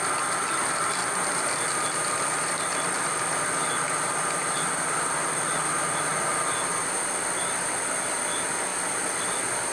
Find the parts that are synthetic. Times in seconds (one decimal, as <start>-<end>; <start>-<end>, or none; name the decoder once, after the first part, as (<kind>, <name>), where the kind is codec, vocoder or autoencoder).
none